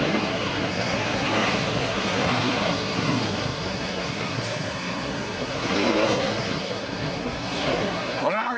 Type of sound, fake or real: fake